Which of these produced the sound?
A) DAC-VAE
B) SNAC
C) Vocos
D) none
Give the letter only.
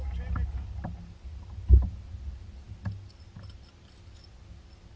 D